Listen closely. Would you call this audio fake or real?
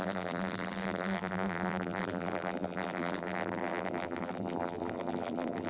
fake